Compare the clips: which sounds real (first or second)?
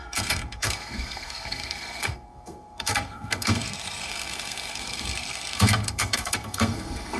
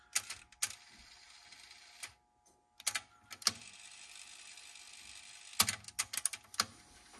second